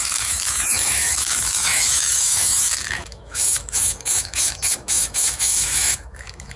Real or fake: fake